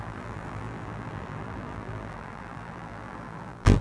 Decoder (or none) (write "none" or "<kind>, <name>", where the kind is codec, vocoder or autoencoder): vocoder, BigVGAN v2